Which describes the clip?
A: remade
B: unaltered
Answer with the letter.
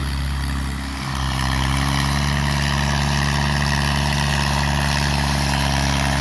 B